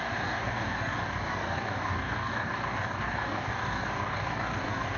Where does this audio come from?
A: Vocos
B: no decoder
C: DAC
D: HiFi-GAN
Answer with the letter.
C